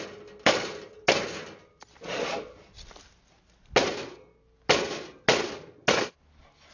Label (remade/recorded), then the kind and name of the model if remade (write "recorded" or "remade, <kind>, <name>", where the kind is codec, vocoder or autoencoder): recorded